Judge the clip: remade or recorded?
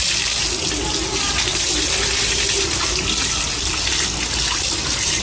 recorded